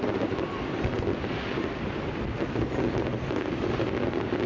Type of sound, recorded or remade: recorded